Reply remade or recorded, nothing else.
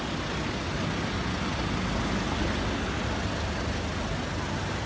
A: recorded